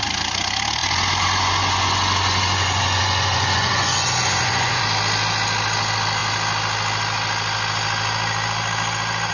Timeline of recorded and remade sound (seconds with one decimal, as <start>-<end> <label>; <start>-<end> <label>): 0.0-0.8 recorded; 0.8-4.8 remade; 4.8-9.3 recorded